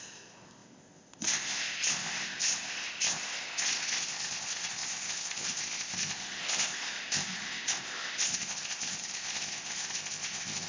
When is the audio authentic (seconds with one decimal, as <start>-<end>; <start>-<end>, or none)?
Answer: none